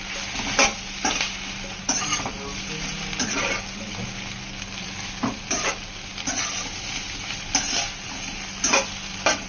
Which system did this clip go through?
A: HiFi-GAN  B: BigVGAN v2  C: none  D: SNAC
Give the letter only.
C